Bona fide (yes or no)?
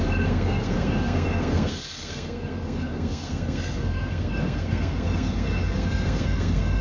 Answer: no